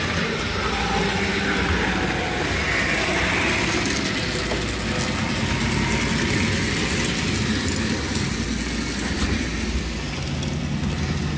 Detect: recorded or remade recorded